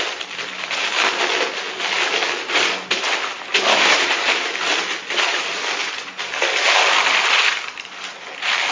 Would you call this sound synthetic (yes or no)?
no